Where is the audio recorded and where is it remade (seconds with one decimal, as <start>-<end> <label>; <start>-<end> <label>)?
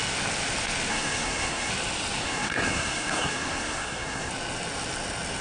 0.0-0.9 recorded; 0.9-1.7 remade; 1.7-2.2 recorded; 2.2-4.3 remade; 4.3-5.4 recorded